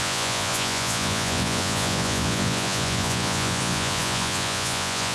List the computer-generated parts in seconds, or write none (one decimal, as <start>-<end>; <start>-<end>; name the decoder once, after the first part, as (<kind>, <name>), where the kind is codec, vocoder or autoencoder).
0.0-5.1 (vocoder, Vocos)